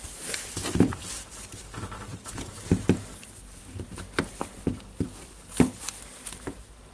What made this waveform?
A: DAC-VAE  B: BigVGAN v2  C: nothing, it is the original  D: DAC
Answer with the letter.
B